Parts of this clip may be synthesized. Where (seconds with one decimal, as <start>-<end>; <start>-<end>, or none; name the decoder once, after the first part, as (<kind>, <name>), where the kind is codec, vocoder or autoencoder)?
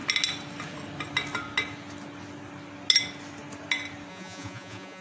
4.1-5.0 (vocoder, Vocos)